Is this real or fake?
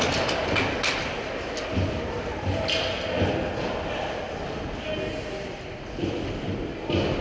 real